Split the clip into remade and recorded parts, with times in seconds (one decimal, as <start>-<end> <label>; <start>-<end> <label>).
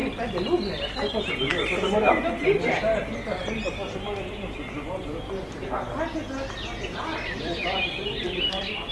0.0-7.1 recorded; 7.1-8.9 remade